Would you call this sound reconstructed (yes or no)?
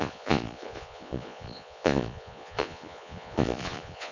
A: yes